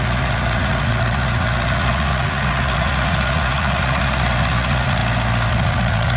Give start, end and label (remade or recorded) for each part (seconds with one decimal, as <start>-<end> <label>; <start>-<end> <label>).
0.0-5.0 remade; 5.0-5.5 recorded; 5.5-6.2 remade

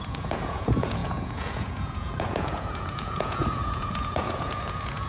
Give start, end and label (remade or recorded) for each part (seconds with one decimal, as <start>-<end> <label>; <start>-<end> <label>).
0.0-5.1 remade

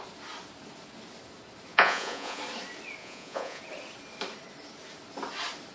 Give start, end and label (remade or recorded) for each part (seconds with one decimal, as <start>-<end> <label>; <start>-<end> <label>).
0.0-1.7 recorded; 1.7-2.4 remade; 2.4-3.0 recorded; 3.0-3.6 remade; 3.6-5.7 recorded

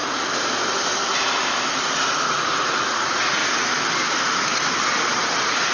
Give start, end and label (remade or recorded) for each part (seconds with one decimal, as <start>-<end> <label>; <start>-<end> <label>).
0.0-2.1 recorded; 2.1-3.4 remade; 3.4-5.7 recorded

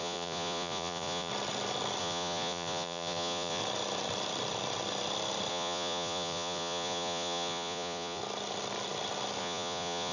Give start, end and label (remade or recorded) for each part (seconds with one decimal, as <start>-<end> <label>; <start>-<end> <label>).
0.0-1.3 remade; 1.3-2.0 recorded; 2.0-3.6 remade; 3.6-5.5 recorded; 5.5-8.2 remade; 8.2-9.4 recorded; 9.4-10.1 remade

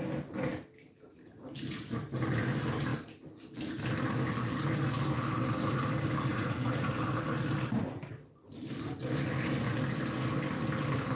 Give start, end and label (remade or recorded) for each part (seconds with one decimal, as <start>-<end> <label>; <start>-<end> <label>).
0.0-6.3 recorded; 6.3-6.9 remade; 6.9-11.2 recorded

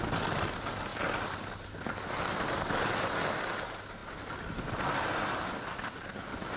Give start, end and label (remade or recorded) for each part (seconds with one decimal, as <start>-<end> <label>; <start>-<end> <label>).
0.0-6.6 recorded

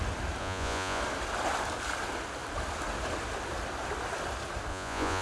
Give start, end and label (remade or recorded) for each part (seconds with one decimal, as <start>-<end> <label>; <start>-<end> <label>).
0.0-0.4 recorded; 0.4-1.0 remade; 1.0-4.7 recorded; 4.7-5.2 remade